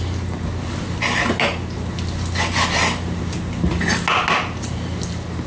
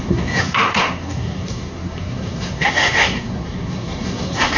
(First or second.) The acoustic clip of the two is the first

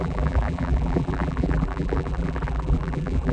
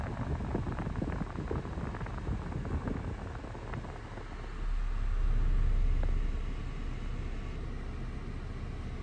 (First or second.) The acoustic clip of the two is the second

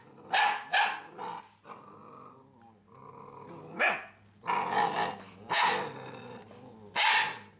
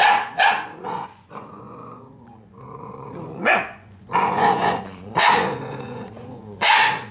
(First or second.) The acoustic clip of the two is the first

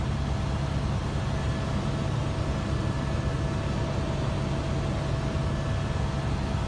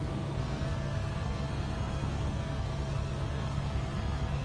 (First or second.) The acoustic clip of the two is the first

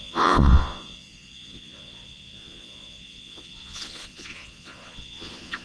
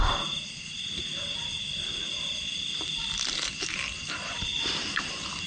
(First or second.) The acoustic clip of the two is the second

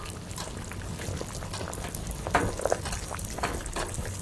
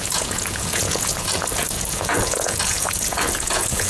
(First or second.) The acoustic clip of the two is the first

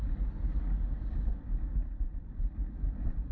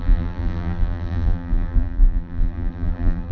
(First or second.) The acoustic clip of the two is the first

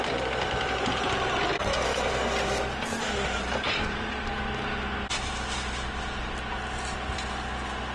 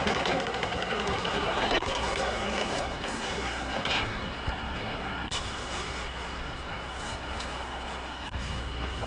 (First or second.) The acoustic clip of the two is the first